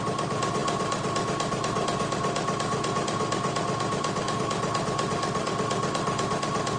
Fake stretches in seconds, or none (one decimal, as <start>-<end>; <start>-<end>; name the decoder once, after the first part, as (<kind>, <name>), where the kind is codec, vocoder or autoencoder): none